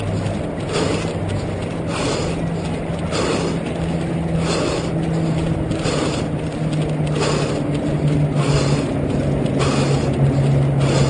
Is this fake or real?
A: real